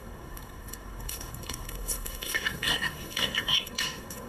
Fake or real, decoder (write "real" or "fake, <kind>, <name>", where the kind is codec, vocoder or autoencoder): fake, codec, SNAC